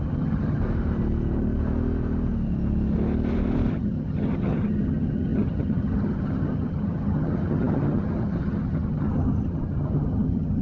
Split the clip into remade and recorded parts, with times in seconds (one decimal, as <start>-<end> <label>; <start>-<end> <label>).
0.0-0.6 remade; 0.6-3.7 recorded; 3.7-10.6 remade